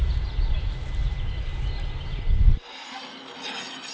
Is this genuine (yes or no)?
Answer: yes